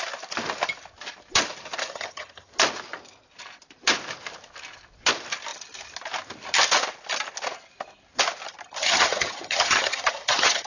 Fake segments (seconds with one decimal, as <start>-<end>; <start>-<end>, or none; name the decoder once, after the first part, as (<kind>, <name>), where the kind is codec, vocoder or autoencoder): 1.8-2.5 (vocoder, HiFi-GAN); 8.8-10.7